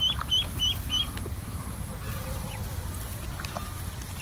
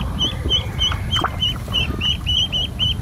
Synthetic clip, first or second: second